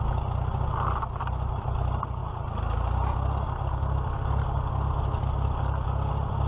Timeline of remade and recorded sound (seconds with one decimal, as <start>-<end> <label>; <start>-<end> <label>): 0.0-6.5 recorded